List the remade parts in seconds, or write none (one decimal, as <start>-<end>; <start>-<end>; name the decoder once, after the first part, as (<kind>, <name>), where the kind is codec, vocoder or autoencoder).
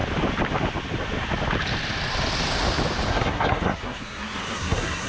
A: 3.1-5.1 (codec, SNAC)